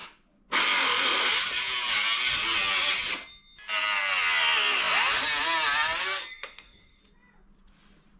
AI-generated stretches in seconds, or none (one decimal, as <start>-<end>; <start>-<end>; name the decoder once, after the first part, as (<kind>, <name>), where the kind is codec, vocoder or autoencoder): 6.0-7.0 (codec, SNAC)